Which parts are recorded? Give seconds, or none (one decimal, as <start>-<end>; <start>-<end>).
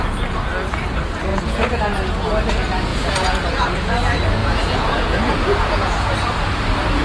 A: 0.0-1.3; 2.1-2.9; 3.6-4.4; 6.1-7.0